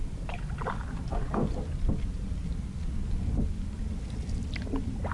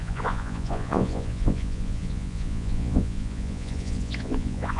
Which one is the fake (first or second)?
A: second